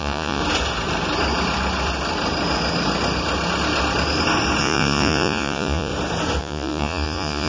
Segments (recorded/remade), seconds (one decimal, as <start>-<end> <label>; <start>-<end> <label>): 0.0-0.4 remade; 0.4-4.6 recorded; 4.6-5.9 remade; 5.9-6.4 recorded; 6.4-7.5 remade